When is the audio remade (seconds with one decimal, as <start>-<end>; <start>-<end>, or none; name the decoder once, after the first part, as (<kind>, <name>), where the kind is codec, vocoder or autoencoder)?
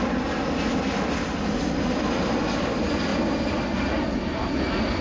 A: none